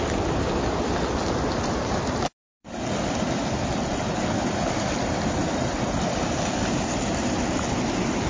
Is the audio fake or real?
real